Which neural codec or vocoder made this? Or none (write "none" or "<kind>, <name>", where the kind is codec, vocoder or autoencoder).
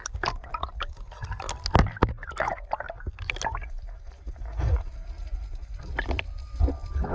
none